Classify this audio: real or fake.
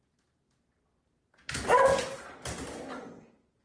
real